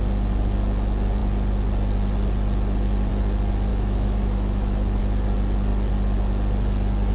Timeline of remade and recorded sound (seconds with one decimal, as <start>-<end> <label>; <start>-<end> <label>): 0.0-3.7 recorded; 3.7-5.0 remade; 5.0-7.1 recorded